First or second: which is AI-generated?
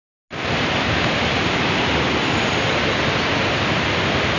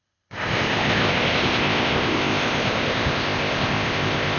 second